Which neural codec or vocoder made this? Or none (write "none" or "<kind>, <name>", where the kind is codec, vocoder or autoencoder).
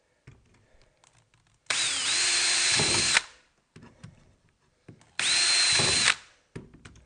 vocoder, BigVGAN v2